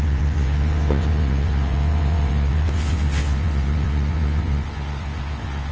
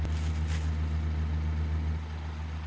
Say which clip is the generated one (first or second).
first